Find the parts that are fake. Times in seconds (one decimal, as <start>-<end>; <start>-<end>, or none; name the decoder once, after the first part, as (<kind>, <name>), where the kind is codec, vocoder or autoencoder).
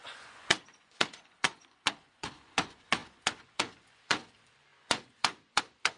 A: 0.0-6.0 (vocoder, Vocos)